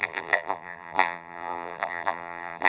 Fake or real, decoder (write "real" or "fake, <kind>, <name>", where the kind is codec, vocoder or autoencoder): fake, vocoder, BigVGAN v2